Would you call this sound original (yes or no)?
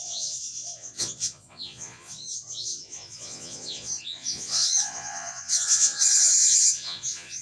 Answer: no